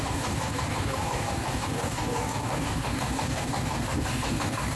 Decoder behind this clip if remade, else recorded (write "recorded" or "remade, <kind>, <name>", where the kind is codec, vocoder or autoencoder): remade, codec, DAC